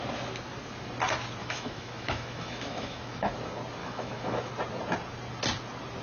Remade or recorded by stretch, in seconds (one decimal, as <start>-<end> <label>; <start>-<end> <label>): 0.0-1.4 recorded; 1.4-3.3 remade; 3.3-3.8 recorded; 3.8-4.5 remade; 4.5-6.0 recorded